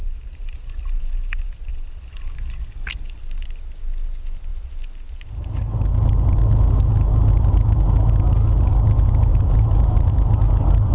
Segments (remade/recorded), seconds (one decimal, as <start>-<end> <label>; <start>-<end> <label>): 0.0-1.9 remade; 1.9-9.3 recorded; 9.3-10.1 remade; 10.1-10.9 recorded

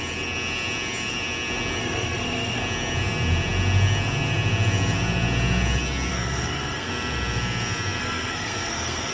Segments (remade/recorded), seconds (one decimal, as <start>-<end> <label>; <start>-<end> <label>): 0.0-1.8 recorded; 1.8-2.6 remade; 2.6-6.1 recorded; 6.1-6.9 remade; 6.9-8.0 recorded; 8.0-9.1 remade

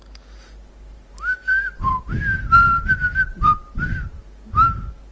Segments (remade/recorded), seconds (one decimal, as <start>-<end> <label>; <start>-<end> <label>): 0.0-0.9 recorded; 0.9-1.9 remade; 1.9-3.3 recorded; 3.3-4.1 remade; 4.1-5.1 recorded

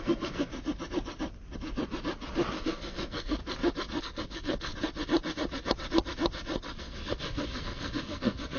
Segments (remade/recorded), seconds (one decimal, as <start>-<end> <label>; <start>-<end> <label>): 0.0-0.5 remade; 0.5-2.6 recorded; 2.6-3.4 remade; 3.4-4.0 recorded; 4.0-4.7 remade; 4.7-6.8 recorded; 6.8-8.6 remade

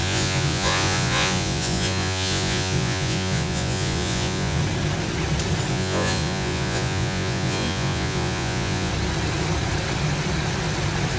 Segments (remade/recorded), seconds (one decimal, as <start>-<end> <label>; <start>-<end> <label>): 0.0-4.6 remade; 4.6-5.7 recorded; 5.7-8.9 remade; 8.9-11.2 recorded

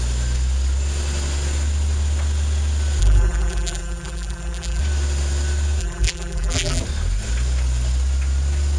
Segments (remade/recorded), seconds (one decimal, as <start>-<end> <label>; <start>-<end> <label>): 0.0-3.0 recorded; 3.0-4.8 remade; 4.8-5.8 recorded; 5.8-6.8 remade; 6.8-8.8 recorded